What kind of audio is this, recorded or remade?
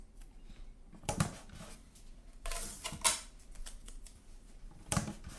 recorded